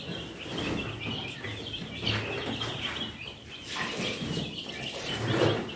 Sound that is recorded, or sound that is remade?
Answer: recorded